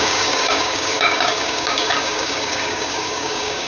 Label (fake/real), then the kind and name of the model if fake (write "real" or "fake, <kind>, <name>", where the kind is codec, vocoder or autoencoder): fake, codec, DAC